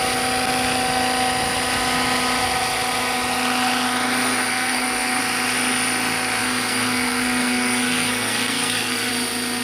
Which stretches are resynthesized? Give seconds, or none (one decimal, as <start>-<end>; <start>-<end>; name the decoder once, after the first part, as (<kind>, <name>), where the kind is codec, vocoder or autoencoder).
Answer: 4.5-5.2 (codec, SNAC); 6.4-9.1